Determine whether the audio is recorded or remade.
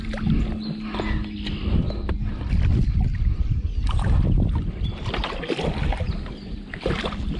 recorded